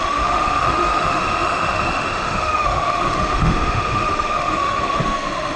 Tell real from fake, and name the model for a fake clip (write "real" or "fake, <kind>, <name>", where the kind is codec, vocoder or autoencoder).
fake, autoencoder, DAC-VAE